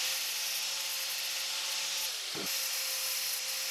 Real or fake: real